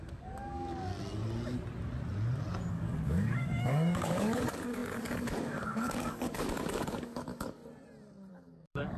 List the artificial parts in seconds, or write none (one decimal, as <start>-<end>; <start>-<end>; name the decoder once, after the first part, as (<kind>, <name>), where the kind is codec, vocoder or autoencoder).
0.0-0.9 (codec, DAC); 2.7-7.6; 8.3-9.0